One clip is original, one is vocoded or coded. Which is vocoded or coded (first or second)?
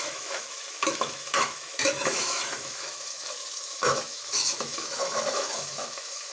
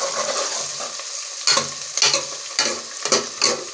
first